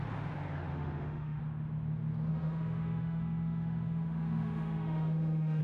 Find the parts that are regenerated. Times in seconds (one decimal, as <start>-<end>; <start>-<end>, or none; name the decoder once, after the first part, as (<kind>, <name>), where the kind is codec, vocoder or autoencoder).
0.7-1.4 (autoencoder, DAC-VAE); 2.3-5.6